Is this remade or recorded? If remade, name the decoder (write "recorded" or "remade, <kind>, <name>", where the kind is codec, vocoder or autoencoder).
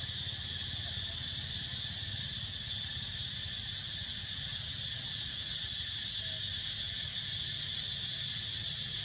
recorded